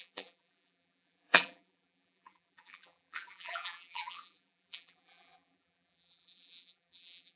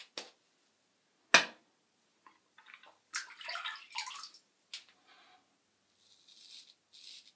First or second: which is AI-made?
first